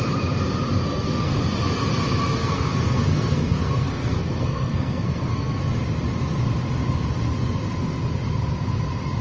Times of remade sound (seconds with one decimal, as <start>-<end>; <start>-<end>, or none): 0.8-1.4; 2.4-5.6